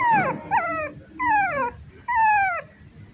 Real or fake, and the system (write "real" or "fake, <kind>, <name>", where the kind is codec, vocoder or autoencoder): real